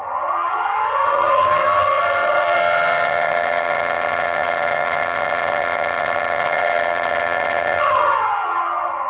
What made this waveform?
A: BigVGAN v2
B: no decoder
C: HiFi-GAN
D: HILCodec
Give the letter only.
C